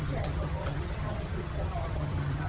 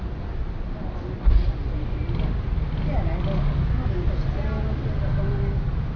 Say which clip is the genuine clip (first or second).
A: second